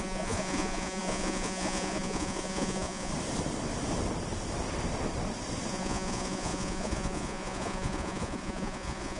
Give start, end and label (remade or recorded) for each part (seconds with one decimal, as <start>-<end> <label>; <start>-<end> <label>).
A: 0.0-3.1 remade; 3.1-5.7 recorded; 5.7-9.2 remade

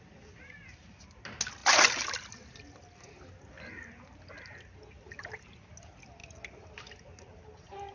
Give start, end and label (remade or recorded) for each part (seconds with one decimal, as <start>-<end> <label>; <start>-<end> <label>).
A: 0.0-7.9 recorded